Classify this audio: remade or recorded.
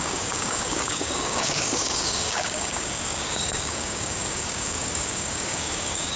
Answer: remade